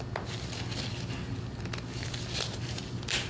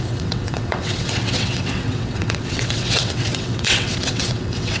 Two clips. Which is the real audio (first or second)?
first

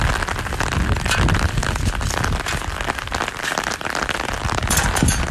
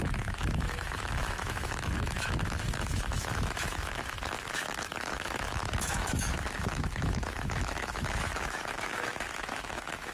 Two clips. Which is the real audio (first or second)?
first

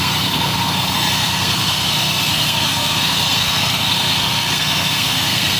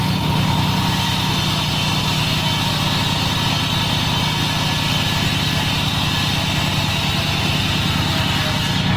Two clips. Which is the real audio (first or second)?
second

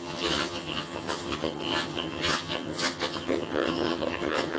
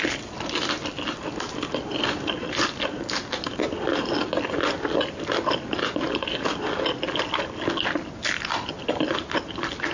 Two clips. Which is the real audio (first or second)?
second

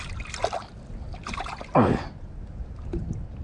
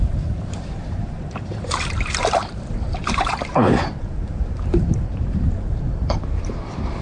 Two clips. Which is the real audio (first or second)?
first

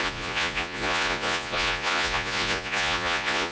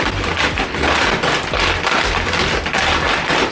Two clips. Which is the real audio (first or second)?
second